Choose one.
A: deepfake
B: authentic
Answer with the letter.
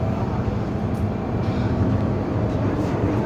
A